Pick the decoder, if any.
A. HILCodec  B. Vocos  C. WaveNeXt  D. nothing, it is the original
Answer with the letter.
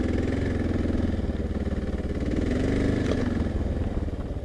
D